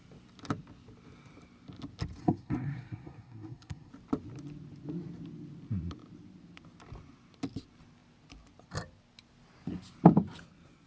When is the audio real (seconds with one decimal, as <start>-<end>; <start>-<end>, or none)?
0.0-2.2; 3.9-10.9